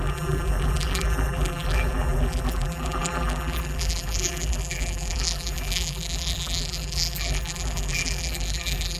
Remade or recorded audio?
remade